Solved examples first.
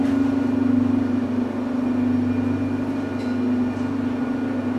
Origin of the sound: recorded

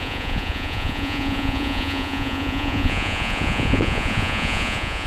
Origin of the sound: remade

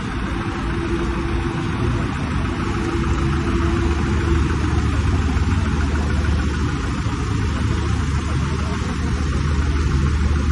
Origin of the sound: recorded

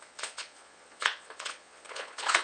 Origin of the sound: remade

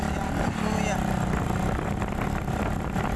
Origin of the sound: recorded